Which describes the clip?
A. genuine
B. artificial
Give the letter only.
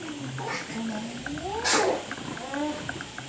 A